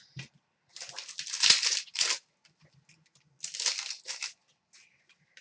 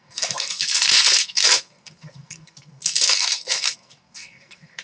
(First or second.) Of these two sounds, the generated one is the second